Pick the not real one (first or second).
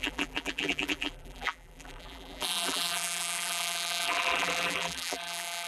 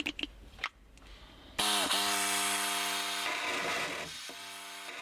first